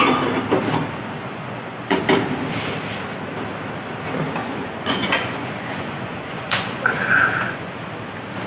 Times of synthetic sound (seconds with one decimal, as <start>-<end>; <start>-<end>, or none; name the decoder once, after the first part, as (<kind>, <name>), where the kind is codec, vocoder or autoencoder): 1.2-2.0 (vocoder, Vocos); 4.4-7.8

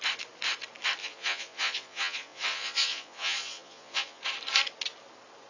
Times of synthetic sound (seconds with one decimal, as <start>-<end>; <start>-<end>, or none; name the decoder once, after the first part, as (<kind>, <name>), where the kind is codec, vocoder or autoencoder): 1.0-4.2 (vocoder, Vocos)

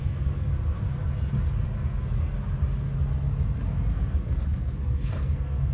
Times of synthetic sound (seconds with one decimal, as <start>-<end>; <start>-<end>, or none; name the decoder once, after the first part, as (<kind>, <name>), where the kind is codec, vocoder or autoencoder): 0.0-0.5 (codec, SNAC); 3.9-5.7

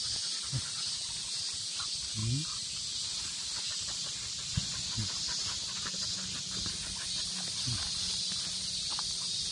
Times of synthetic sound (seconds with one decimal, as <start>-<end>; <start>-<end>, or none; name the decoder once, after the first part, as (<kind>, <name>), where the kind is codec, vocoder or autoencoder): none

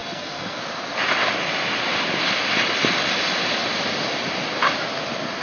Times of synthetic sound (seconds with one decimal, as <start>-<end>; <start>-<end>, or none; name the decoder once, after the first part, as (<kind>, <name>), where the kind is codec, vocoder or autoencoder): 0.0-0.6 (codec, SNAC)